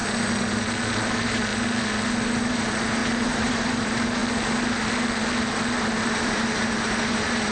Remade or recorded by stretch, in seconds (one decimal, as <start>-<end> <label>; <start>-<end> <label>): 0.0-1.1 recorded; 1.1-1.5 remade; 1.5-2.5 recorded; 2.5-4.2 remade; 4.2-5.8 recorded; 5.8-7.5 remade